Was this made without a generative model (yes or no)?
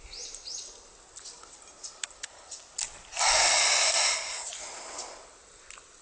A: yes